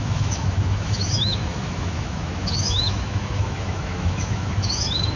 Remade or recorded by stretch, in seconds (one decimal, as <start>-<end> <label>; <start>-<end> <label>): 0.0-5.2 remade

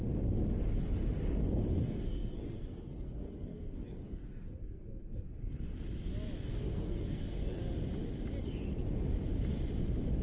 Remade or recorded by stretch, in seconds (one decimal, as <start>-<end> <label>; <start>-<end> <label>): 0.0-1.8 recorded; 1.8-5.4 remade; 5.4-6.5 recorded; 6.5-7.6 remade; 7.6-10.2 recorded

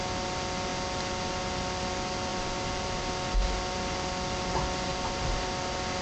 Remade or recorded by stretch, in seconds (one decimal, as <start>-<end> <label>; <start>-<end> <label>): 0.0-2.3 recorded; 2.3-3.1 remade; 3.1-4.9 recorded; 4.9-5.5 remade; 5.5-6.0 recorded

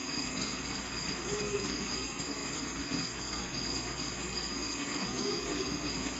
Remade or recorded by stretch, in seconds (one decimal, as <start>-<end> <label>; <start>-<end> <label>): 0.0-6.2 remade